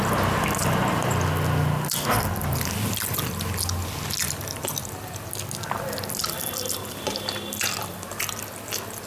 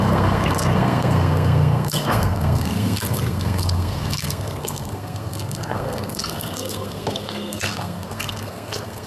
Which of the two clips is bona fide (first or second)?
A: first